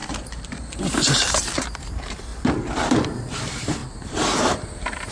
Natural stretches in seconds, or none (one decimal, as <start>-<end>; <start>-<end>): 2.3-2.9

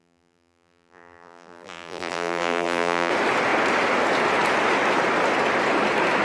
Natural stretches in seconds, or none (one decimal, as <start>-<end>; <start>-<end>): 3.1-6.2

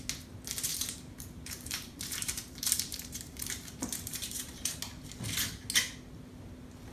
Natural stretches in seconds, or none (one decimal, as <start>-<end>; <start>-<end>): 0.0-0.7; 4.8-6.9

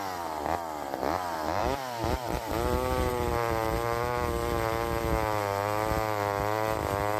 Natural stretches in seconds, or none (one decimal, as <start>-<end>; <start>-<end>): 0.0-1.6; 3.1-7.2

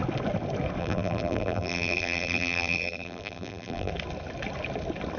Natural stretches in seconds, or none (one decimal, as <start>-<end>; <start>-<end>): 0.0-0.8; 3.9-5.2

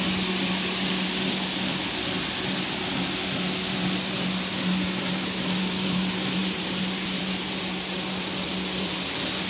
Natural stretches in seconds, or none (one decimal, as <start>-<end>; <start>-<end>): 0.0-6.4; 7.2-9.5